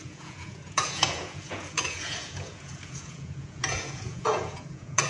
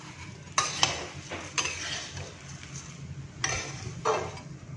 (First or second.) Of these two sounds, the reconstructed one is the first